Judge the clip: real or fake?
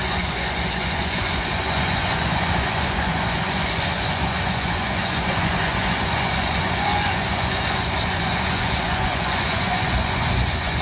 fake